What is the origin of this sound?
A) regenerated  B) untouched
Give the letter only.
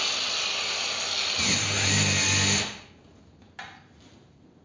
B